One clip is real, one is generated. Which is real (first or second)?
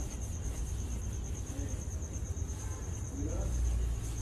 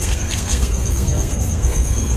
first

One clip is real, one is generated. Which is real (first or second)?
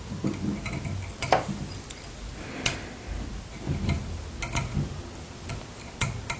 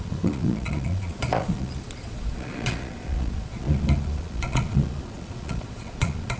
first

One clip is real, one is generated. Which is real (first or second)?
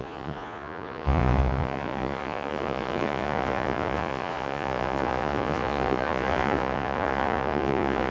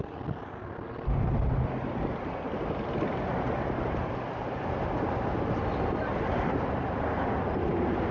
second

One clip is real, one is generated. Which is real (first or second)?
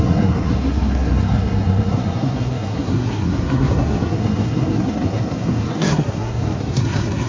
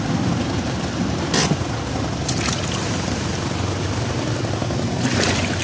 second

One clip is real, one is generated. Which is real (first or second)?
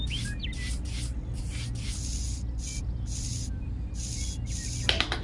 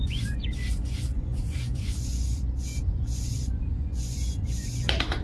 first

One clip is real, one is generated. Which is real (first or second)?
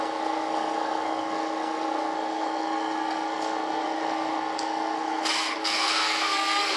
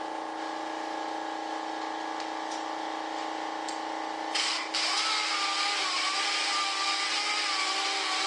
second